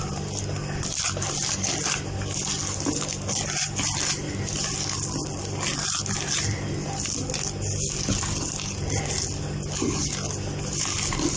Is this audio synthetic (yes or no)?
no